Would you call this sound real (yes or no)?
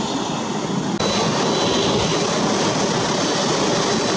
yes